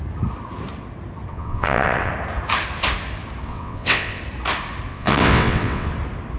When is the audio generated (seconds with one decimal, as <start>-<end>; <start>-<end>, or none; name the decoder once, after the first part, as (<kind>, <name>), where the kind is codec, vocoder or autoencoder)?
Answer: 1.3-2.1 (vocoder, WaveNeXt); 3.5-4.2; 4.9-5.9